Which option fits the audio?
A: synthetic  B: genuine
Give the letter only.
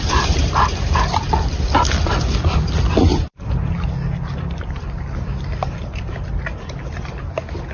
A